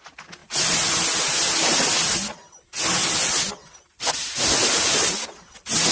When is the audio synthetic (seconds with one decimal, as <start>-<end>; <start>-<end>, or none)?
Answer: none